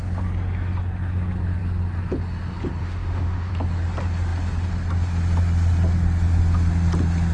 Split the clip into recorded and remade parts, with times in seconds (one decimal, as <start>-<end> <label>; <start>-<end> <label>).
0.0-2.8 recorded; 2.8-3.5 remade; 3.5-7.3 recorded